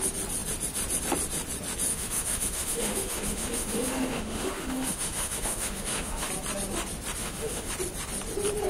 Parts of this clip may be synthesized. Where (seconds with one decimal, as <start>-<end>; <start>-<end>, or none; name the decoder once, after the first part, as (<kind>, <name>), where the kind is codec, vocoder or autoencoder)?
1.9-6.3 (autoencoder, DAC-VAE); 7.2-7.7